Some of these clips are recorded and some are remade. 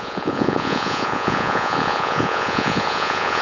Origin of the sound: remade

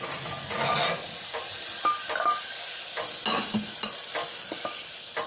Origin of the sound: recorded